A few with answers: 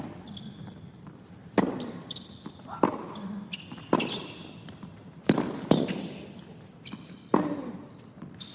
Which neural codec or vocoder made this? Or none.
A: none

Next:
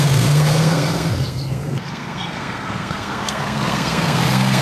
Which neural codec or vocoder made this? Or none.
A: codec, SNAC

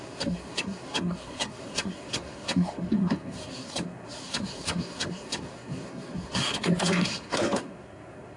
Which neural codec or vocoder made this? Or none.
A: codec, SNAC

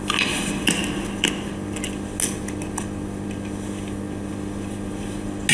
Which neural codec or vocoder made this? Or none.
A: none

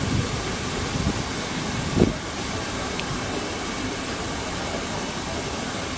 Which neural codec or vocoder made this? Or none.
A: none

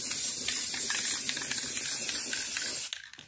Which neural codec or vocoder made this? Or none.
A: none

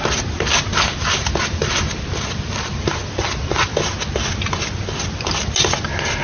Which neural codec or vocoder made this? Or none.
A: none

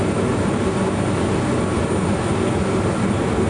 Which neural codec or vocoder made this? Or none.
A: none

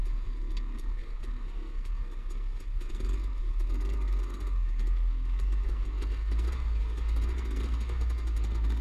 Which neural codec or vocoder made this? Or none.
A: codec, SNAC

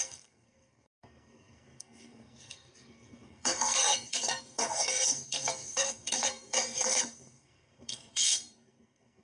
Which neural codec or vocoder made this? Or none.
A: codec, SNAC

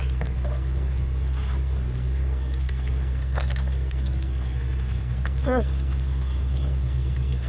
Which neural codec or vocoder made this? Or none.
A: codec, SNAC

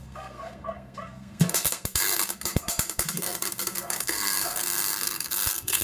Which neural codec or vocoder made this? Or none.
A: codec, SNAC